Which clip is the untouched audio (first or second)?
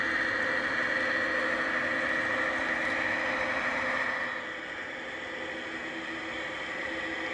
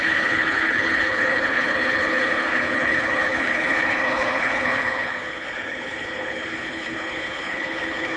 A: first